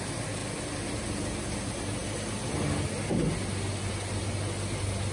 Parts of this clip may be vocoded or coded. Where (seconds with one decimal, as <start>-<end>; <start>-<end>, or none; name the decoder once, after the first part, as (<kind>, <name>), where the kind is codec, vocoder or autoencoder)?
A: none